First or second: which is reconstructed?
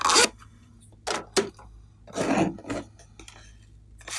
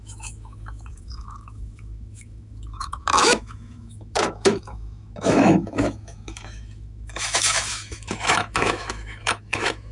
second